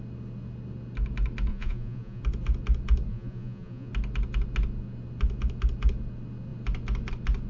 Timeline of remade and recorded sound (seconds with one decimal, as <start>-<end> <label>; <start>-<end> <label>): 0.0-1.5 recorded; 1.5-2.2 remade; 2.2-3.1 recorded; 3.1-3.9 remade; 3.9-7.5 recorded